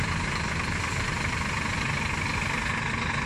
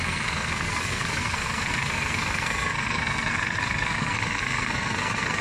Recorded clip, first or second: first